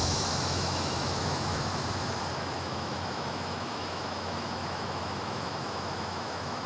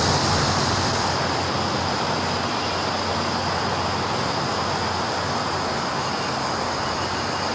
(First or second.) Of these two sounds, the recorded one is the second